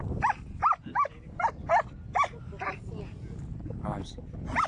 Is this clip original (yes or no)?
yes